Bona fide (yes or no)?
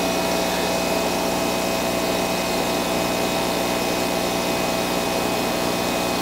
yes